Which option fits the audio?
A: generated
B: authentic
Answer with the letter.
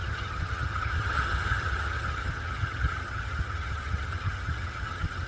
A